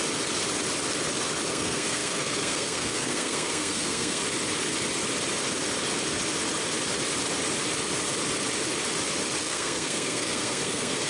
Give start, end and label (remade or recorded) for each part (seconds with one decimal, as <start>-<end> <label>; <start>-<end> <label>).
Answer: 0.0-1.5 recorded; 1.5-4.2 remade; 4.2-9.4 recorded; 9.4-11.1 remade